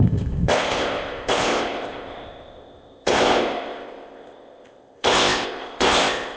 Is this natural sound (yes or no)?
no